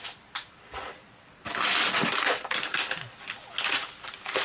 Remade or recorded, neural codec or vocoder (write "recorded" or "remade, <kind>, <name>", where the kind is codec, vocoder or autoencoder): recorded